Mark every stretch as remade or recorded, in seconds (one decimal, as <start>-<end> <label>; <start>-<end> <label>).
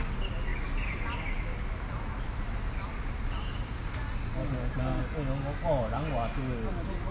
0.0-7.1 recorded